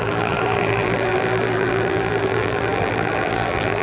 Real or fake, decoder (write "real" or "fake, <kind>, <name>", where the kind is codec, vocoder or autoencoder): fake, vocoder, BigVGAN v2